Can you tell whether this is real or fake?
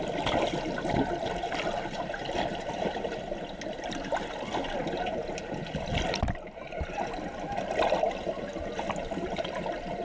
real